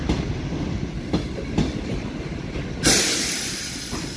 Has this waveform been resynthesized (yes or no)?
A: yes